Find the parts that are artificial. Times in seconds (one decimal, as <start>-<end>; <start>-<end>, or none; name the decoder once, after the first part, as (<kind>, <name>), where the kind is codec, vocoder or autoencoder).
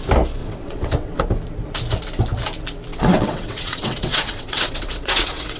0.4-1.2 (vocoder, WaveNeXt); 2.9-5.6